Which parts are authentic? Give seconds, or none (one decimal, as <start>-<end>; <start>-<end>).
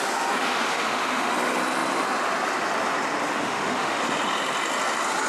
0.0-0.4; 1.3-3.4; 4.0-5.3